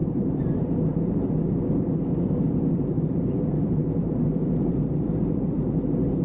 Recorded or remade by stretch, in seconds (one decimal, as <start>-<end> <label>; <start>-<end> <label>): 0.0-6.2 remade